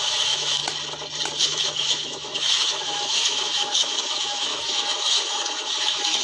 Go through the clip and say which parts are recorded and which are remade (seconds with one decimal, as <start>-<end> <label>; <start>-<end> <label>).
0.0-0.6 remade; 0.6-1.4 recorded; 1.4-6.2 remade